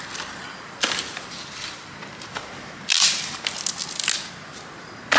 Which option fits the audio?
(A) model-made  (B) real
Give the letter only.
B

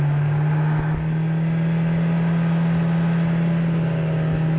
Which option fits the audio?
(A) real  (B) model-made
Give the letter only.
A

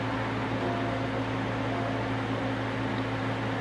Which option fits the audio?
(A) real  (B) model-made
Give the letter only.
A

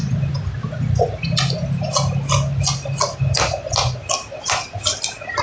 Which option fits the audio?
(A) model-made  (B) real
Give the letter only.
B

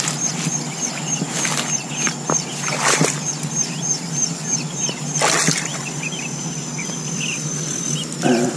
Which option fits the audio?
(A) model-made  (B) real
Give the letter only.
B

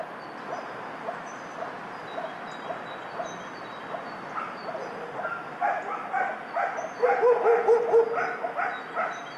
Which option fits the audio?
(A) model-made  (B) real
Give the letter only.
B